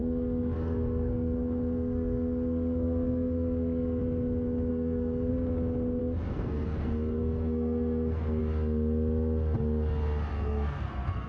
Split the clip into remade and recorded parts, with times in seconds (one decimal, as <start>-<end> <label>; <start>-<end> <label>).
0.0-4.0 remade; 4.0-4.7 recorded; 4.7-5.3 remade; 5.3-6.0 recorded; 6.0-8.4 remade; 8.4-10.3 recorded; 10.3-11.3 remade